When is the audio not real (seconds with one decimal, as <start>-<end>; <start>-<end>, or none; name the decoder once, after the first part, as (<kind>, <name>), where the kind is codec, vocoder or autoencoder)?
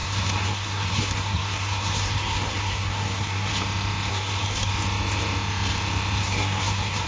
0.0-3.5 (codec, SNAC); 4.1-4.7; 6.2-7.1